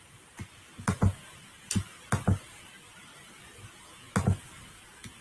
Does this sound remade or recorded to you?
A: recorded